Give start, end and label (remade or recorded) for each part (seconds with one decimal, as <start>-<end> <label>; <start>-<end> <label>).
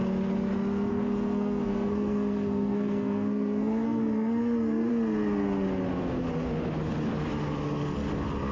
0.0-0.9 recorded; 0.9-4.9 remade; 4.9-8.5 recorded